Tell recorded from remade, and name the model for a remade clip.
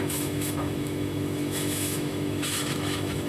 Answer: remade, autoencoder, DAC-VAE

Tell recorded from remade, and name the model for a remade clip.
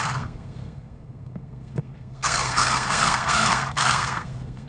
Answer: remade, codec, SNAC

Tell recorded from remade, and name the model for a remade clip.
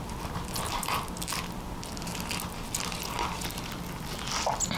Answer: recorded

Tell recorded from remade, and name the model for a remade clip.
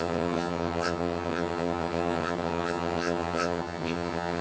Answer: remade, vocoder, HiFi-GAN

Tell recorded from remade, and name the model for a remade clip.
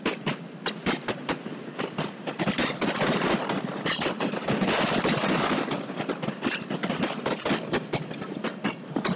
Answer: remade, vocoder, BigVGAN v2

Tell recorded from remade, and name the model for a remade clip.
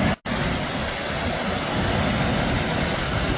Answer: recorded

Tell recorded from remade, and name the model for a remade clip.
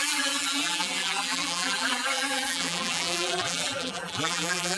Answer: remade, vocoder, BigVGAN v2